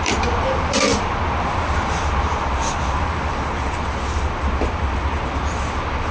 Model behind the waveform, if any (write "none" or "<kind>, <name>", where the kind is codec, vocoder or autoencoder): none